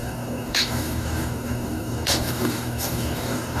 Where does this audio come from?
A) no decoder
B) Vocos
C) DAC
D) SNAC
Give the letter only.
C